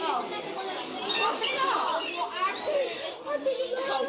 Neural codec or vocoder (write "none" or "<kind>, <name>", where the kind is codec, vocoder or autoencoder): vocoder, BigVGAN v2